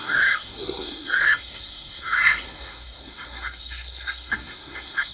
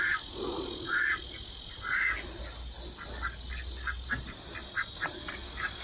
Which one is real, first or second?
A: second